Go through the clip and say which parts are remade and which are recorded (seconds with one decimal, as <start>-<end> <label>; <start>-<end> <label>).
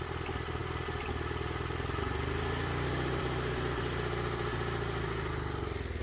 0.0-6.0 recorded